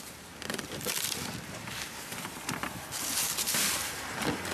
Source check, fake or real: fake